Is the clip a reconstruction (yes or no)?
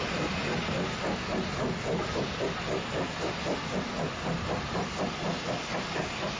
no